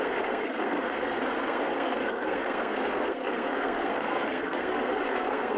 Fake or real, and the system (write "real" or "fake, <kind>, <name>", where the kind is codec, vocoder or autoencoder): fake, codec, SNAC